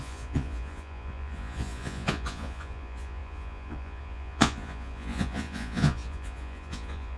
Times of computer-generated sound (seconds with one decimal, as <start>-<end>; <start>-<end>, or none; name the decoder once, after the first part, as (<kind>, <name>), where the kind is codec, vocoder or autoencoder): 0.0-7.2 (vocoder, Vocos)